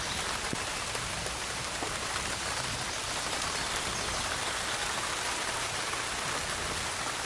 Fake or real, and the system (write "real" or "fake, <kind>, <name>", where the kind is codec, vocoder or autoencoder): real